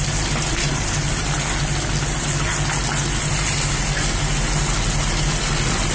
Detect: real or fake real